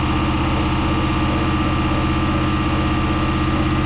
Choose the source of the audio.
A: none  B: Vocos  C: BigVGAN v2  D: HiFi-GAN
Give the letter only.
A